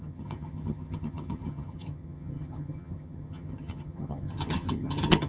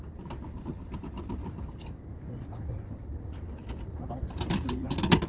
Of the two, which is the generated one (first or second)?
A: first